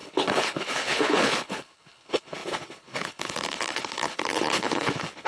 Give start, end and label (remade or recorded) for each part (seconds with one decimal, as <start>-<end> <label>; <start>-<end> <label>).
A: 0.0-5.3 remade